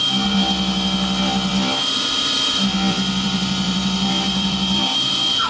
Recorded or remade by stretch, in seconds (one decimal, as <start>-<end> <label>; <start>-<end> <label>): 0.0-1.5 recorded; 1.5-4.8 remade; 4.8-5.5 recorded